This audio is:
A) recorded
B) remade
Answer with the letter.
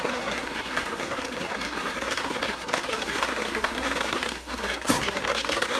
B